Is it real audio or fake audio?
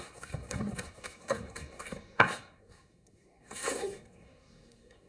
fake